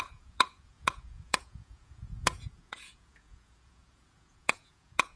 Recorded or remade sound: remade